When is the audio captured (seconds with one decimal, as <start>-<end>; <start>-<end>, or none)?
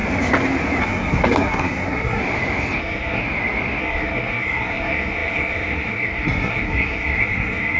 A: 0.0-0.8; 2.2-2.8; 3.2-3.8